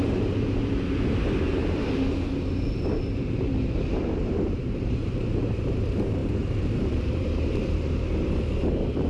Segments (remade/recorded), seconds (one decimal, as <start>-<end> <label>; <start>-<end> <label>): 0.0-9.1 remade